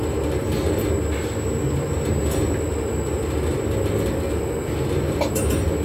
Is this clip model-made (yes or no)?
no